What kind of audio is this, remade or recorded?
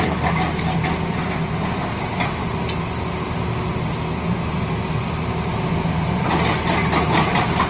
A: recorded